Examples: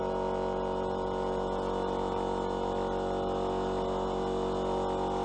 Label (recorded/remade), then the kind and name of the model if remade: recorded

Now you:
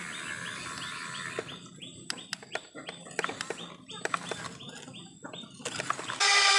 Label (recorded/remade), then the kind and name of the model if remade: recorded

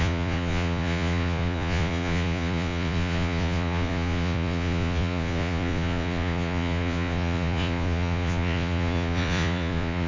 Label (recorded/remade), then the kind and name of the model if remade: remade, vocoder, Vocos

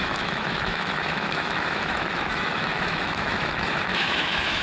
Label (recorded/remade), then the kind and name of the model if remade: remade, autoencoder, DAC-VAE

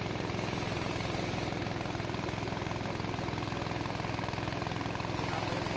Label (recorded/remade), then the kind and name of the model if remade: recorded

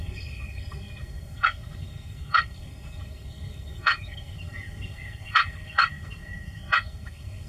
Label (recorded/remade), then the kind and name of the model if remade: remade, codec, SNAC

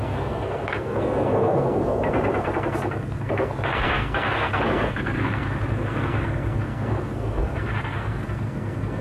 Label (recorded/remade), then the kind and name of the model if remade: remade, codec, SNAC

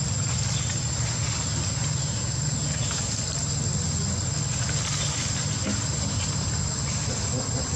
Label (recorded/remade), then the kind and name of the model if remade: recorded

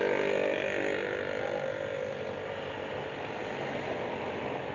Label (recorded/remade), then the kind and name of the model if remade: recorded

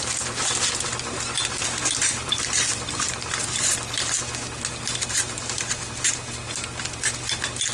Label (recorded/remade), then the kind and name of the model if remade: recorded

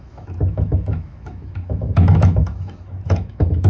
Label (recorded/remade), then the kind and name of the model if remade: remade, autoencoder, DAC-VAE